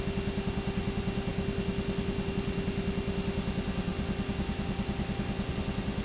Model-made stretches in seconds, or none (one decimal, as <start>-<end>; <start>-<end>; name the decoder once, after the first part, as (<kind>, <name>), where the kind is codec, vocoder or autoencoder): none